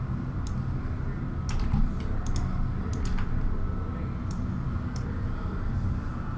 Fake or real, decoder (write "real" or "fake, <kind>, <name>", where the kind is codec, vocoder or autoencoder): real